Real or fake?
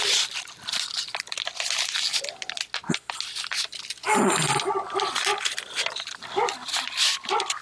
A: real